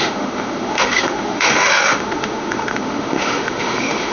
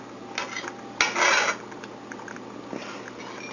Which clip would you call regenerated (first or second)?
first